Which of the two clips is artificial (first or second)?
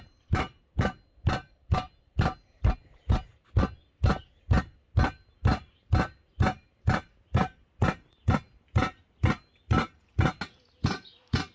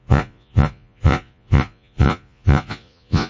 second